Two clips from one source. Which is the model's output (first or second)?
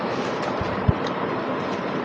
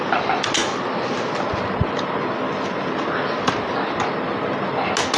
first